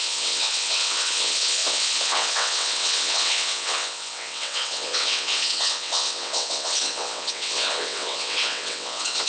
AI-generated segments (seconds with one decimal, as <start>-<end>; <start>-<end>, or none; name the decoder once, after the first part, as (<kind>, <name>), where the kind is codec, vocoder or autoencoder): 0.0-9.3 (vocoder, WaveNeXt)